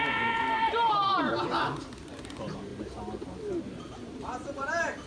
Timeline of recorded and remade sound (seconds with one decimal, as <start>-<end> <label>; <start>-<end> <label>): 0.0-1.0 remade; 1.0-2.0 recorded; 2.0-2.7 remade; 2.7-3.6 recorded; 3.6-5.1 remade